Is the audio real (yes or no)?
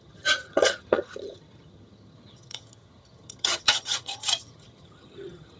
no